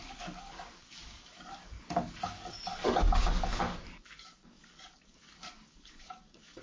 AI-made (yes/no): yes